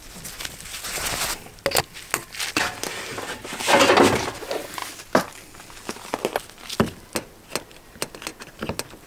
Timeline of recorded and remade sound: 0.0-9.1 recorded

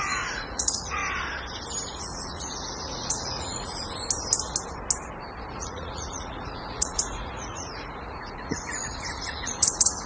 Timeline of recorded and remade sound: 0.0-1.0 remade; 1.0-2.0 recorded; 2.0-3.7 remade; 3.7-5.5 recorded; 5.5-10.1 remade

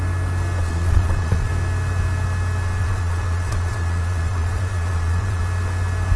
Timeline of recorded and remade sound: 0.0-0.6 recorded; 0.6-1.5 remade; 1.5-2.8 recorded; 2.8-5.4 remade; 5.4-6.2 recorded

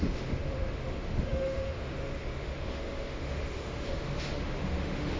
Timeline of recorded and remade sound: 0.0-5.2 remade

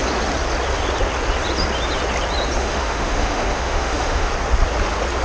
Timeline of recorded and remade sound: 0.0-2.6 recorded; 2.6-4.3 remade; 4.3-5.2 recorded

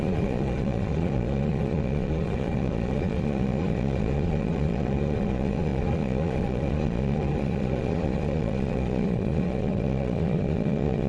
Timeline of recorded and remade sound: 0.0-11.1 remade

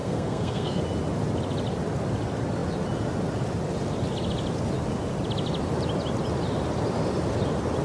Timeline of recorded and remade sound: 0.0-0.8 remade; 0.8-7.8 recorded

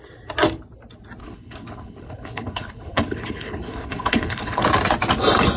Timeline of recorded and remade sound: 0.0-1.2 recorded; 1.2-4.6 remade; 4.6-5.6 recorded